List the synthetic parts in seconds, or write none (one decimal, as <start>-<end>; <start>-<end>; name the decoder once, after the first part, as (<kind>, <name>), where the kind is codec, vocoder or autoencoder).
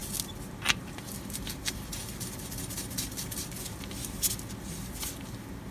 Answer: none